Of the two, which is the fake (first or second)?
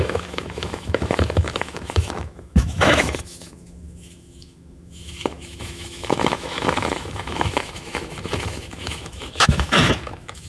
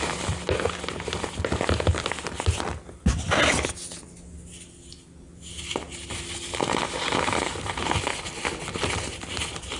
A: first